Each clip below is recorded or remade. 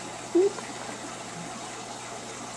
recorded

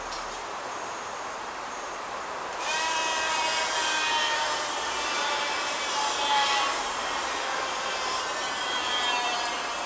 remade